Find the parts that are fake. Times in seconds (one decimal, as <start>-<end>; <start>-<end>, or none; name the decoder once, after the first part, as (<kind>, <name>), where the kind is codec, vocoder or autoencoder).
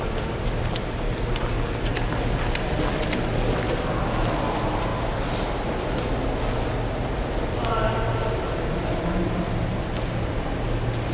none